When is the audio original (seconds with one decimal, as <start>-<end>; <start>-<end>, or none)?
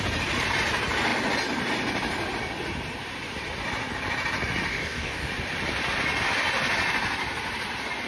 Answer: 0.0-4.7; 5.3-8.1